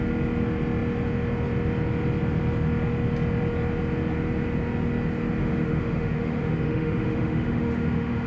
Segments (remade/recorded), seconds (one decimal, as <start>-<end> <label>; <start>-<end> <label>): 0.0-5.4 recorded; 5.4-8.3 remade